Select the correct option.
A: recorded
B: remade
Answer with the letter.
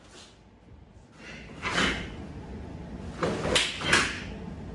A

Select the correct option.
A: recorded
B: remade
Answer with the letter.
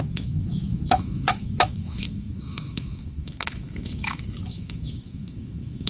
B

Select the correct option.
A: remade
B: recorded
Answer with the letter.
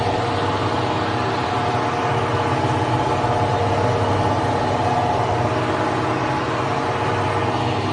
B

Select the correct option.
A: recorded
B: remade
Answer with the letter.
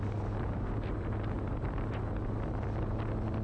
A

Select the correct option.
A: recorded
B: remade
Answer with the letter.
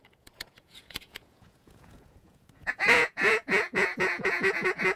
B